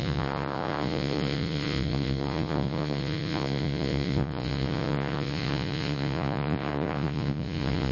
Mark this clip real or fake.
fake